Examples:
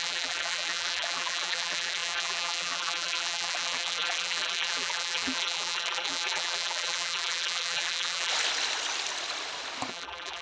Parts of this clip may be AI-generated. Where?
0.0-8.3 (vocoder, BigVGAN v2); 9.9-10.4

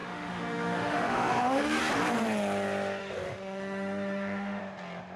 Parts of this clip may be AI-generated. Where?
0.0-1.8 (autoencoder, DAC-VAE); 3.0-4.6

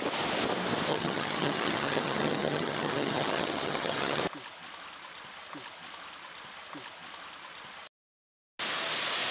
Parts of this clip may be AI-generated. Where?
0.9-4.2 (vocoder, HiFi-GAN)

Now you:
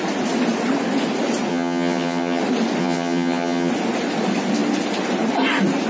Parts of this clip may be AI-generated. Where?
1.5-2.4 (vocoder, HiFi-GAN); 2.8-3.7